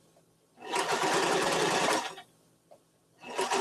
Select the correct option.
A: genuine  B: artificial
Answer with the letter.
A